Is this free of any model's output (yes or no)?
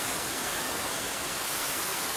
no